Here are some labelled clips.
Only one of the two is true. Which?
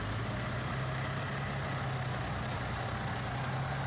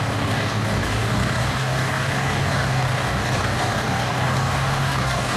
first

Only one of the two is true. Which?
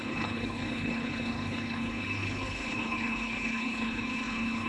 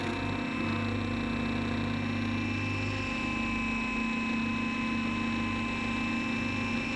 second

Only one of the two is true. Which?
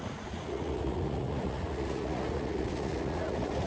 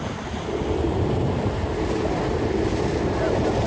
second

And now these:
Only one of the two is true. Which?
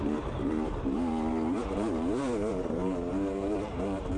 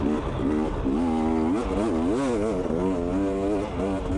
second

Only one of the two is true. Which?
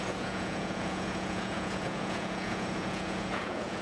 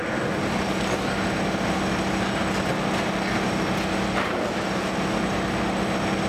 second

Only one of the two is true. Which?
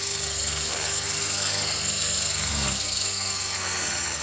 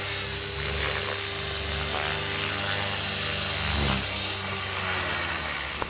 second